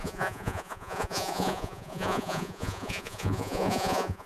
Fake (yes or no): yes